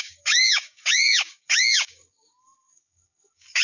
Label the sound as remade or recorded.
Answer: remade